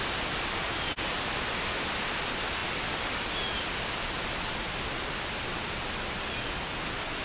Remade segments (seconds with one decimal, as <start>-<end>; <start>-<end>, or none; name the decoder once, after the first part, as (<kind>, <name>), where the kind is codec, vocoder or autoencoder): none